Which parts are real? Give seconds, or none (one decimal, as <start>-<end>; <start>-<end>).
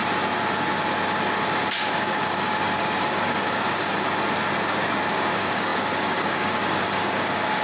0.0-1.8; 3.9-5.1